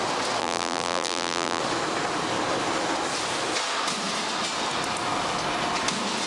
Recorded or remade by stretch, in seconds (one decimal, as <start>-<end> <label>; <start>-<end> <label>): 0.0-0.4 recorded; 0.4-1.6 remade; 1.6-6.3 recorded

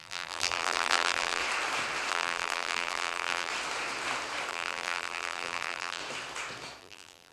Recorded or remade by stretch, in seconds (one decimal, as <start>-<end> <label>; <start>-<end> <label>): 0.0-1.4 remade; 1.4-2.1 recorded; 2.1-3.5 remade; 3.5-4.5 recorded; 4.5-6.0 remade; 6.0-6.8 recorded; 6.8-7.3 remade